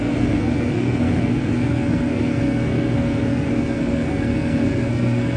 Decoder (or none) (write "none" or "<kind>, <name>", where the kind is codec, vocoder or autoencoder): codec, SNAC